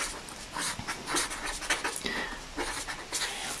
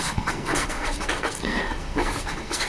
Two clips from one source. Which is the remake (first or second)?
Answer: second